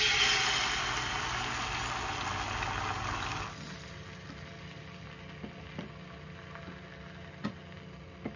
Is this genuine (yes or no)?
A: yes